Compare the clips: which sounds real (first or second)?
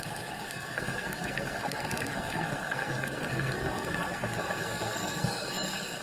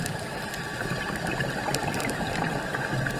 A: second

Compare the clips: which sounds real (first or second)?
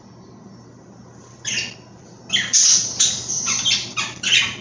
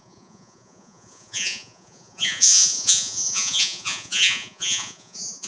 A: first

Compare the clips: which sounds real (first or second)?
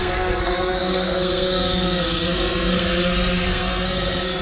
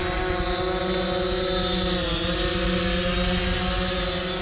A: second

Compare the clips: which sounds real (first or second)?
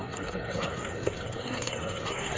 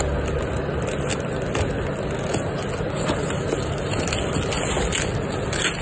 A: second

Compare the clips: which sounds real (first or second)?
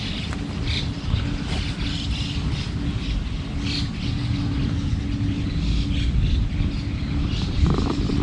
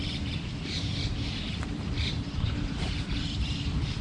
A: first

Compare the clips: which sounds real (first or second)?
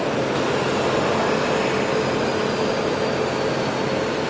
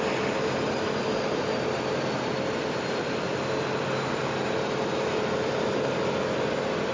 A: first